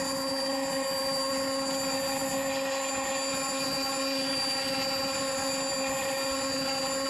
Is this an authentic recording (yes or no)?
yes